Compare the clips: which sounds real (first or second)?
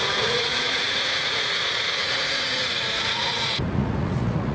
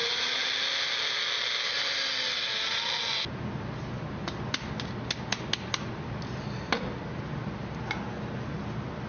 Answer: second